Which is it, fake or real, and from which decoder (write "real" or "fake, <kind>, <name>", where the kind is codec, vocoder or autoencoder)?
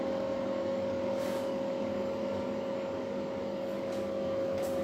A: fake, codec, DAC